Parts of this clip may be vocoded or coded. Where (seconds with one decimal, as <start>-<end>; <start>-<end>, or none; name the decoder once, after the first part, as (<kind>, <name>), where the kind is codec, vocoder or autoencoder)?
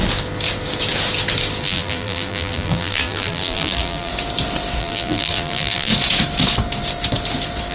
1.6-4.1 (vocoder, BigVGAN v2); 4.8-5.9